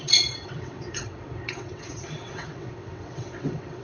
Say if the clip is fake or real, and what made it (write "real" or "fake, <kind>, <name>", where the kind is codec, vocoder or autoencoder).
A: fake, vocoder, WaveNeXt